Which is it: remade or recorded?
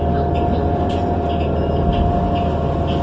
recorded